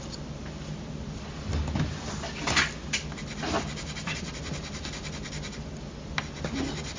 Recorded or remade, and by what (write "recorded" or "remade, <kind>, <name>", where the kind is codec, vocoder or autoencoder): recorded